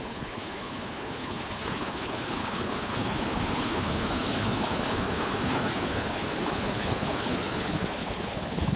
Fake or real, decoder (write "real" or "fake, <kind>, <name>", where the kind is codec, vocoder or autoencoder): fake, codec, HILCodec